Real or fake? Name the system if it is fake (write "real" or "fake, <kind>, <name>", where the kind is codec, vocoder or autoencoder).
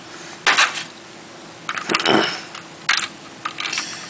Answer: real